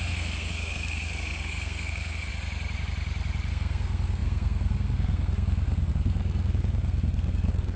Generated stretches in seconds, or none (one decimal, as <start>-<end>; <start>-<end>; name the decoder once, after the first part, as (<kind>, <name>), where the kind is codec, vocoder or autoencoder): 0.0-2.3 (codec, SNAC); 3.5-7.8